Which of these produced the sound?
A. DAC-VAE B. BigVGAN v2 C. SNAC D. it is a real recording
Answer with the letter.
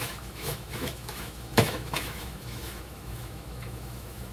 A